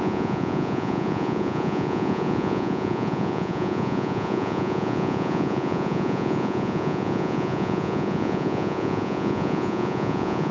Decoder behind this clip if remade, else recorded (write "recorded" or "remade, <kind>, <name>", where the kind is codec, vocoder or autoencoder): remade, vocoder, Vocos